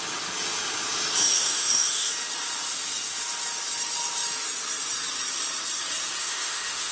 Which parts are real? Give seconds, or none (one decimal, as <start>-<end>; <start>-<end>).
0.0-1.2; 2.1-6.2